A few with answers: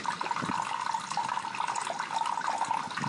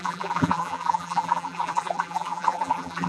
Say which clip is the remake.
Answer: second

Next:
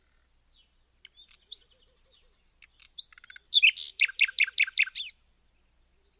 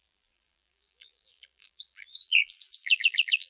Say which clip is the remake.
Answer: second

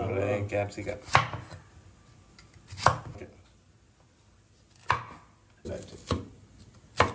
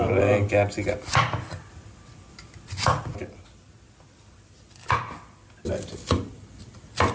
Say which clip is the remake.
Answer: second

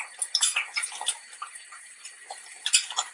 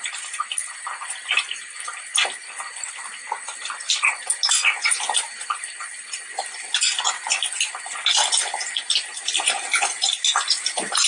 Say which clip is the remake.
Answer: first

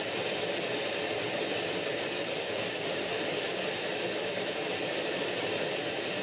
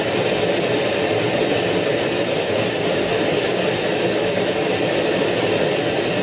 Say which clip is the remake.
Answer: first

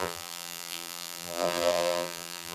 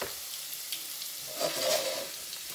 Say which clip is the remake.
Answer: first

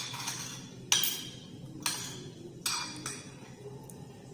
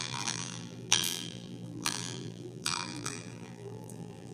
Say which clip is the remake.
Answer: second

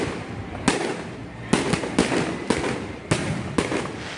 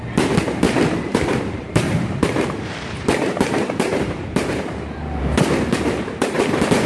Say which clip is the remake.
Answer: second